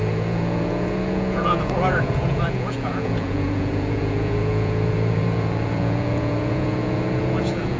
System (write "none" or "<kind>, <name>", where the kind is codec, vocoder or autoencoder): vocoder, Vocos